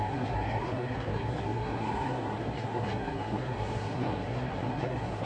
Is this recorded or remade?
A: remade